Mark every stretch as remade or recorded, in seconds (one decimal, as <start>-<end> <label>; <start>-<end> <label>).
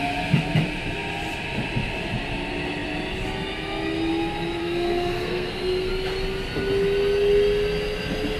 0.0-4.6 recorded; 4.6-5.9 remade; 5.9-8.4 recorded